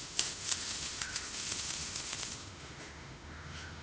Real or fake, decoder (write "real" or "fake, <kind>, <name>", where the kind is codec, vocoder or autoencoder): fake, autoencoder, DAC-VAE